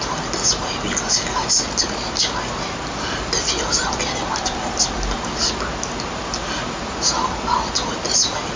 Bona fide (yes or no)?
yes